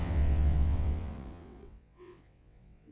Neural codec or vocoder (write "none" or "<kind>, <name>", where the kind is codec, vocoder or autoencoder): vocoder, WaveNeXt